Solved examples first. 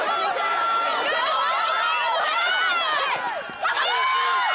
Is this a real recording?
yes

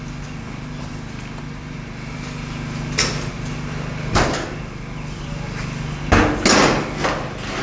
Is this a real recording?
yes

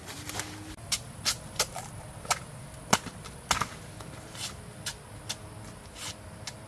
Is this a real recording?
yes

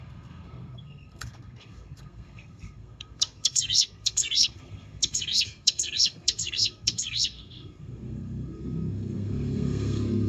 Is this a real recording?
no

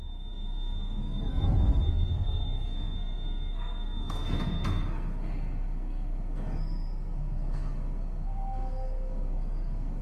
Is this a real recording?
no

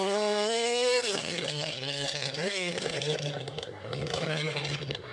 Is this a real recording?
no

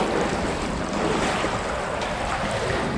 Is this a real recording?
yes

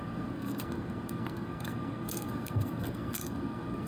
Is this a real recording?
no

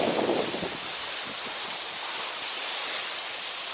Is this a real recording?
yes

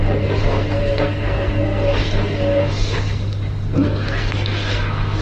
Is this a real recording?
no